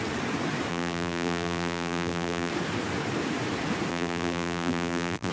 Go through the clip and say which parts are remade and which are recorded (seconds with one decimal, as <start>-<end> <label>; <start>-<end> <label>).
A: 0.0-0.7 recorded; 0.7-2.5 remade; 2.5-3.9 recorded; 3.9-5.3 remade